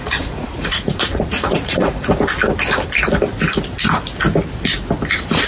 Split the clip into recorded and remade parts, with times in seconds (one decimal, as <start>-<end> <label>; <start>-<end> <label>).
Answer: 0.0-2.1 remade; 2.1-5.5 recorded